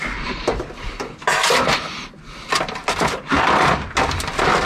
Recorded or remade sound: recorded